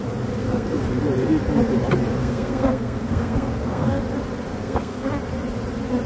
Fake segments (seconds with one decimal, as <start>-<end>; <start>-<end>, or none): 0.4-1.0; 2.2-4.0; 4.5-5.1